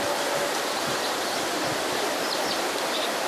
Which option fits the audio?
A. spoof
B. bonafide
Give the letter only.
B